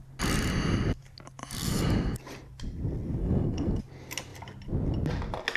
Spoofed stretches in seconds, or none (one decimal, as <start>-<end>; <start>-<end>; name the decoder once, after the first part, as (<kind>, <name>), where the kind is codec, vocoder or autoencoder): 3.2-3.8 (codec, SNAC)